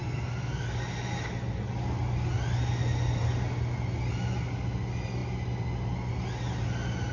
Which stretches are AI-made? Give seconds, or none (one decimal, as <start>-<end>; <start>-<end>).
none